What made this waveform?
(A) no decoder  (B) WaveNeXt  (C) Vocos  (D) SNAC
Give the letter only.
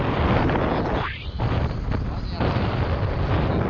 A